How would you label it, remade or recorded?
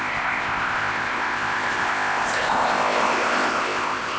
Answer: remade